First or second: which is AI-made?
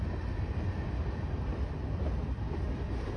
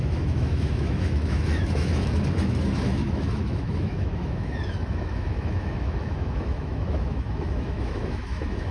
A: second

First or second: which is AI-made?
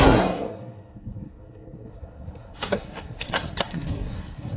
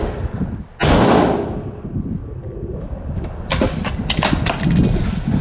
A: first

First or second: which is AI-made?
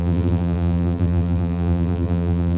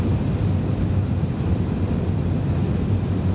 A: first